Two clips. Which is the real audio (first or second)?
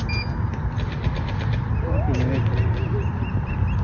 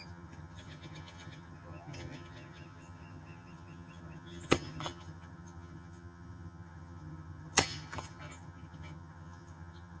first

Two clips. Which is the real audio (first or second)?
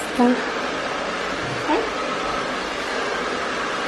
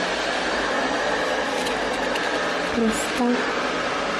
second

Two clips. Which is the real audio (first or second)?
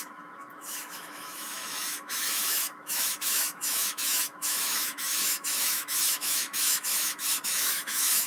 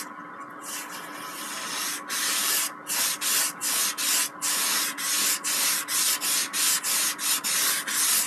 second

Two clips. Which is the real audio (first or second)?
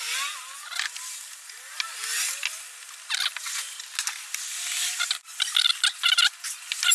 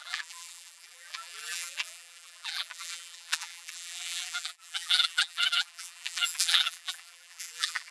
first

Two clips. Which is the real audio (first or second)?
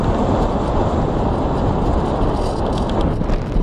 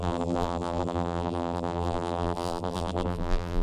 first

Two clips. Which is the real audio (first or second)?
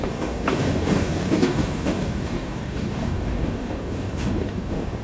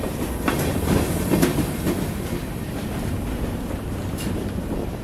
second